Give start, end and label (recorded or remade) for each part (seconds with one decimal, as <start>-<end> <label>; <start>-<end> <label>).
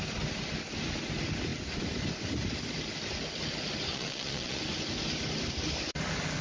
0.0-3.9 recorded; 3.9-4.6 remade; 4.6-6.4 recorded